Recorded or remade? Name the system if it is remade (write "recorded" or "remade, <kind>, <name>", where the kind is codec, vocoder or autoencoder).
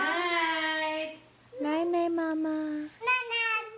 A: recorded